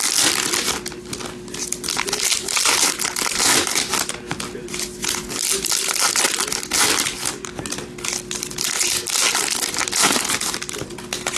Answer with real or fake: real